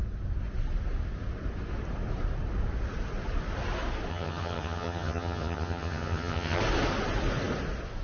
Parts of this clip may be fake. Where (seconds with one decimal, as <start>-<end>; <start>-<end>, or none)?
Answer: 4.1-6.6